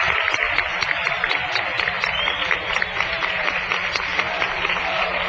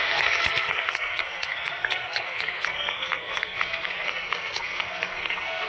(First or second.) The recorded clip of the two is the first